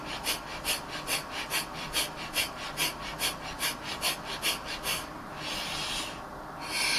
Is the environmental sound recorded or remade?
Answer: recorded